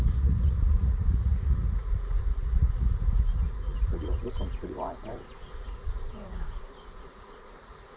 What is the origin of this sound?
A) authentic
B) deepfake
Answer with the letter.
B